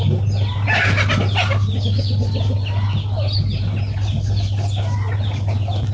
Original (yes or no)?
yes